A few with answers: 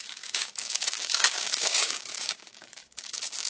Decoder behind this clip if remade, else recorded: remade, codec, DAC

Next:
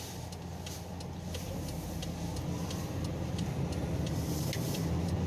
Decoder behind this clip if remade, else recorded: recorded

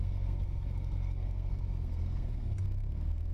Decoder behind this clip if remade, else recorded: remade, codec, SNAC